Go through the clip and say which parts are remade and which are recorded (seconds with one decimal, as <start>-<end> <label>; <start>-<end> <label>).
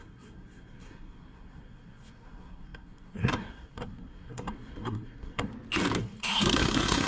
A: 0.0-5.5 remade; 5.5-6.0 recorded; 6.0-7.1 remade